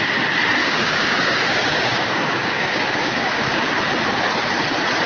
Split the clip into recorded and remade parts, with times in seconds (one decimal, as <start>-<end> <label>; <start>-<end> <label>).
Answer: 0.0-0.6 recorded; 0.6-3.7 remade; 3.7-5.1 recorded